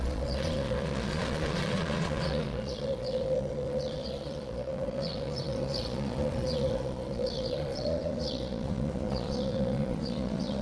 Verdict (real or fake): fake